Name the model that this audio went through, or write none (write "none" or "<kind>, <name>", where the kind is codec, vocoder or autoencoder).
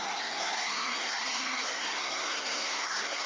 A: codec, SNAC